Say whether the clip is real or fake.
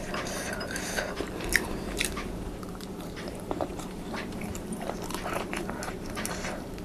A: fake